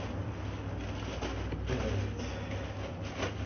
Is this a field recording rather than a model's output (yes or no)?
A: yes